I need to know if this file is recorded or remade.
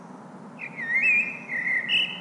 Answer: recorded